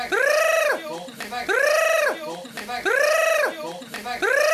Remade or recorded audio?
recorded